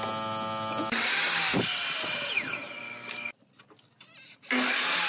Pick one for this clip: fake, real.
real